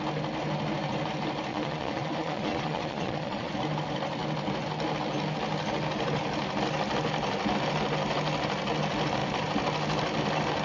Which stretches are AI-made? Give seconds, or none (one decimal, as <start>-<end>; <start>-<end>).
1.5-3.5